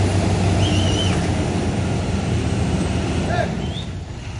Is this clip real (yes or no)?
yes